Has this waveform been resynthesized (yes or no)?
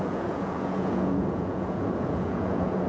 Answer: yes